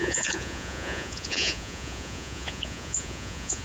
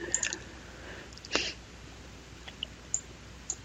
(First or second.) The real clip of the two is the second